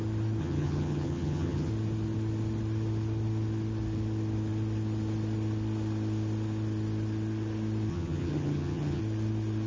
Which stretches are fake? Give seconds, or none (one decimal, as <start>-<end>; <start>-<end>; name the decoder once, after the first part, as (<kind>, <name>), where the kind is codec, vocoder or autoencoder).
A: 0.4-1.7 (vocoder, HiFi-GAN); 7.9-9.0